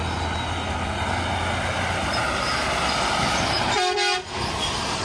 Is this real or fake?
real